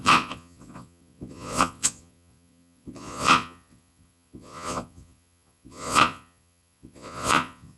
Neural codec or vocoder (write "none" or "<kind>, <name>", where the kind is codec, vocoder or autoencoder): vocoder, Vocos